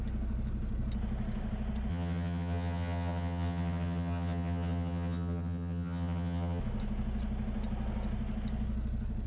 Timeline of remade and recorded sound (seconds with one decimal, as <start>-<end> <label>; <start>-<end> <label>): 0.0-1.9 recorded; 1.9-6.6 remade; 6.6-9.3 recorded